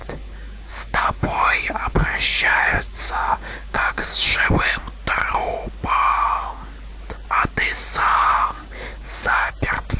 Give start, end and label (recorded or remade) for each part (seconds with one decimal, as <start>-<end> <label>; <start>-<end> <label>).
0.0-4.5 remade; 4.5-8.3 recorded; 8.3-9.5 remade; 9.5-10.0 recorded